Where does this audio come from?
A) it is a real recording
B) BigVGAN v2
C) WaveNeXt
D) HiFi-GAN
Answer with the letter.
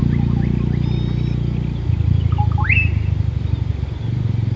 A